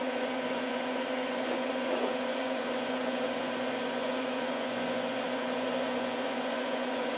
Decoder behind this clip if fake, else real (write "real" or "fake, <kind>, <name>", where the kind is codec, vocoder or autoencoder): fake, vocoder, Vocos